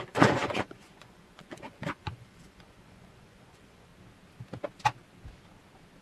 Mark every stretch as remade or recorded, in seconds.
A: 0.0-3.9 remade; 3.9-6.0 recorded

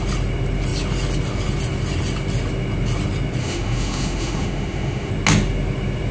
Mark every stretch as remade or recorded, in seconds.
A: 0.0-3.4 recorded; 3.4-5.1 remade; 5.1-6.1 recorded

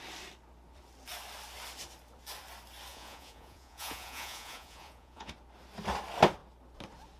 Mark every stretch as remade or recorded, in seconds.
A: 0.0-2.9 recorded; 2.9-5.3 remade; 5.3-7.2 recorded

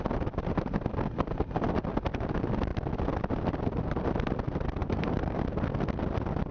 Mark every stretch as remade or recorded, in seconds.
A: 0.0-4.8 recorded; 4.8-5.4 remade; 5.4-6.5 recorded